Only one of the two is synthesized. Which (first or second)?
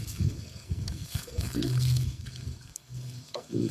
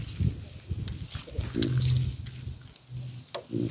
first